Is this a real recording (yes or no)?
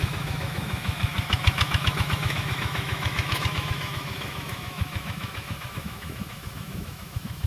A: no